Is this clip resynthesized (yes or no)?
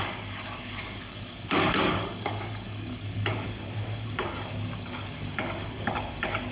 yes